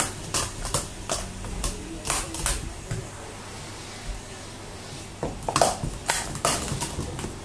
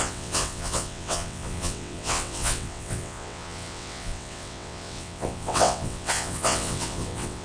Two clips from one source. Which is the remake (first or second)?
second